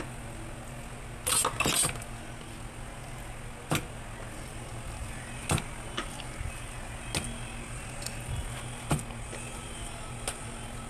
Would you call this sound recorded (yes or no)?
yes